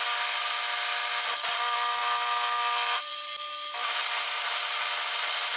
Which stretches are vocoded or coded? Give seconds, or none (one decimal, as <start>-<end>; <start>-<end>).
none